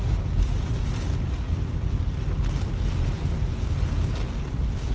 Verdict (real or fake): real